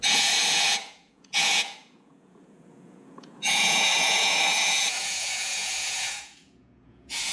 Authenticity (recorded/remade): remade